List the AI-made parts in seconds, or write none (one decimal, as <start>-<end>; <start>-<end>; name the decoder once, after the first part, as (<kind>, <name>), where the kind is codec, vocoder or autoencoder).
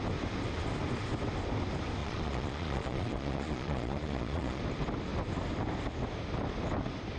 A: 2.0-4.6 (vocoder, Vocos)